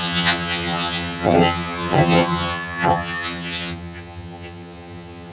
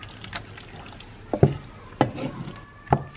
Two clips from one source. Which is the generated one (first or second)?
first